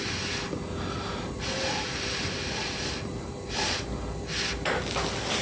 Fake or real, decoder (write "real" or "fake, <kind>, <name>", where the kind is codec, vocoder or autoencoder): real